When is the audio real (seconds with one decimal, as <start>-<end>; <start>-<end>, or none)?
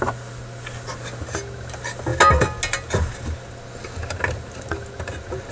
0.0-5.5